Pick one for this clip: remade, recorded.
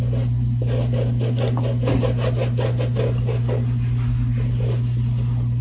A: recorded